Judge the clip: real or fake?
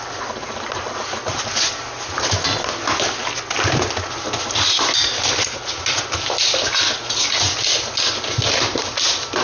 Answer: real